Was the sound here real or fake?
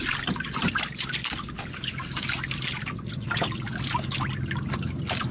real